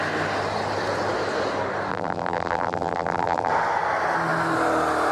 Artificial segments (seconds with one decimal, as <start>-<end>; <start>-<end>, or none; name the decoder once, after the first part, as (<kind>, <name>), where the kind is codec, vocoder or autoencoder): 1.9-3.5 (vocoder, BigVGAN v2)